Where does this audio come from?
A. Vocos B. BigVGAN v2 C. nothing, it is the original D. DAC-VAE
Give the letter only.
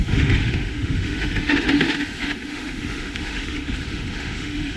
D